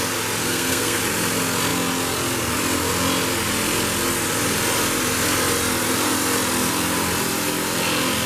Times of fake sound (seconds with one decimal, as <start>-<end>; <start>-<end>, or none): 0.4-1.0